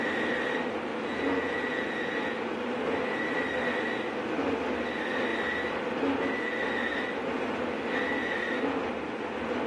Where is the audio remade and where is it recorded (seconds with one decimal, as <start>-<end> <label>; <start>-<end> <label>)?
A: 0.0-0.9 recorded; 0.9-2.5 remade; 2.5-9.7 recorded